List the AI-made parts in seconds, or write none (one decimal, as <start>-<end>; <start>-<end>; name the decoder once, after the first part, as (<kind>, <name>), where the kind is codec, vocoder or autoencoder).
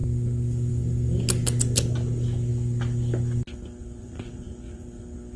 3.8-5.0 (vocoder, Vocos)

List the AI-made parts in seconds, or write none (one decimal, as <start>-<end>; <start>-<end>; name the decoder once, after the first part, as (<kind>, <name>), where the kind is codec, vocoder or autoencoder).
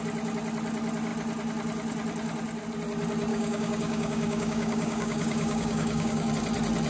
3.3-6.3 (codec, DAC)